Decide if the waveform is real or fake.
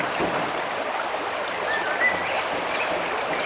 real